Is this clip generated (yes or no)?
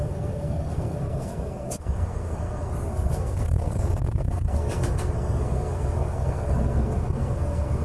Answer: yes